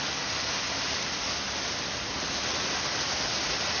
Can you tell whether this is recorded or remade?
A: recorded